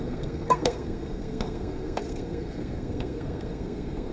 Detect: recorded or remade remade